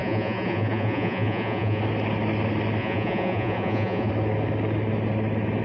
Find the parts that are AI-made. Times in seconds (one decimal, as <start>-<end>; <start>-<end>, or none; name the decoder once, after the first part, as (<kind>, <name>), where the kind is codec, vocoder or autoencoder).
0.0-1.8 (vocoder, Vocos); 2.8-4.1